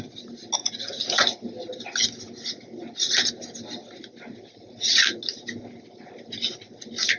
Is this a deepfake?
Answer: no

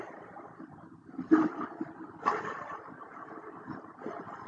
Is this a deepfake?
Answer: yes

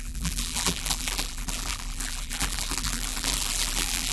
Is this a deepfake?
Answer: yes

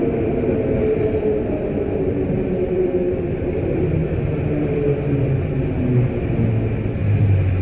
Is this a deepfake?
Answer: no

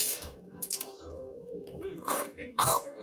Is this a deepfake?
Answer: yes